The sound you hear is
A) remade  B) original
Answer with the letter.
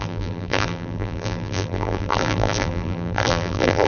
A